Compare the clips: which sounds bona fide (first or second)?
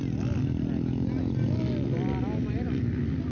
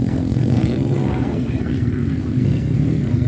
first